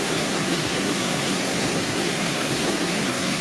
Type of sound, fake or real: fake